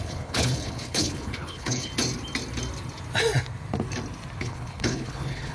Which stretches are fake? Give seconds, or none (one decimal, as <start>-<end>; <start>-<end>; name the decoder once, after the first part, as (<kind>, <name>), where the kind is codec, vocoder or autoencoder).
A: 0.0-1.9 (codec, HILCodec); 4.4-5.5